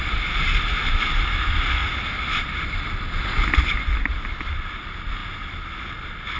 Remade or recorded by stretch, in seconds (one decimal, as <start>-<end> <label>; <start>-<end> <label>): 0.0-6.4 recorded